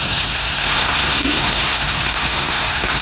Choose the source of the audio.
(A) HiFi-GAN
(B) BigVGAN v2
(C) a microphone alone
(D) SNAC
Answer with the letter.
D